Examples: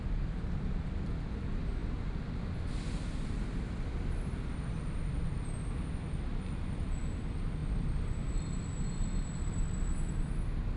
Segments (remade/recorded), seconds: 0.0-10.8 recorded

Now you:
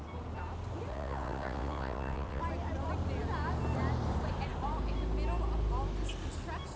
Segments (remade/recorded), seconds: 0.0-0.9 recorded; 0.9-2.4 remade; 2.4-6.8 recorded